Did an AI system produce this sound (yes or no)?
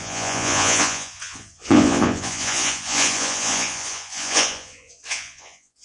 yes